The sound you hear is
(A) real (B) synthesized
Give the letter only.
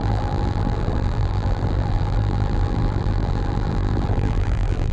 B